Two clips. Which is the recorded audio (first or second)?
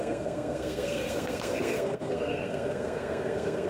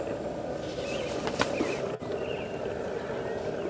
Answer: second